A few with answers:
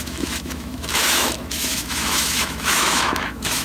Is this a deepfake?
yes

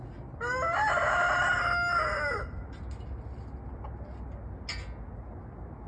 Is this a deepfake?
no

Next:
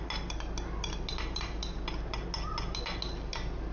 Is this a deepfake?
no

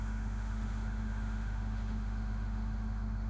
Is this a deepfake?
yes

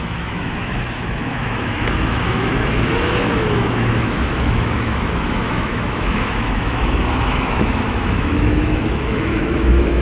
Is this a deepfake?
yes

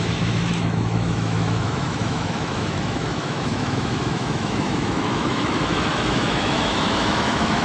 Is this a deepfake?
yes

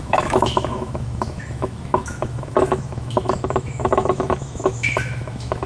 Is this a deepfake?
yes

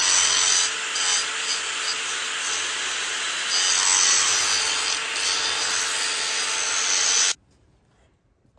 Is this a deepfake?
no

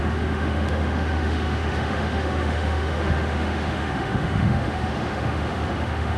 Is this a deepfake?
yes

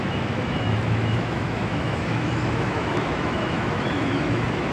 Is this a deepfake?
yes